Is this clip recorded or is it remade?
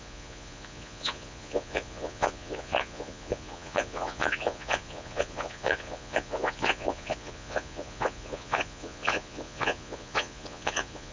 remade